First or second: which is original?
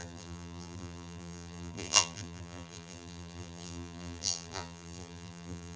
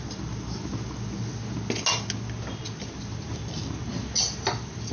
second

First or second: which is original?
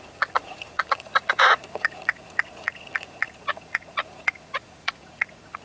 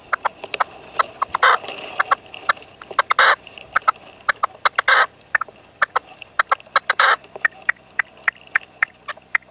second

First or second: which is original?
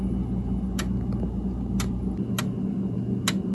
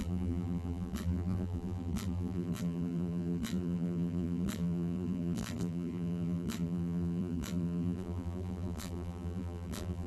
first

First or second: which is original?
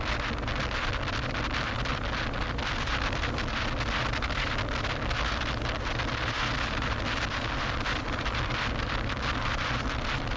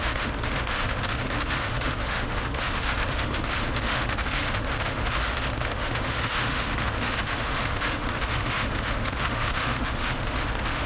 first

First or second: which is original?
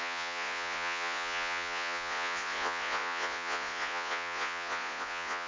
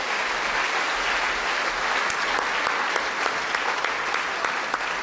second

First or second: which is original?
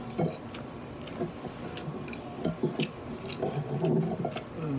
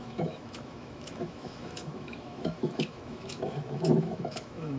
first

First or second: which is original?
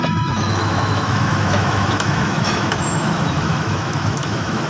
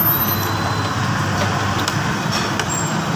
second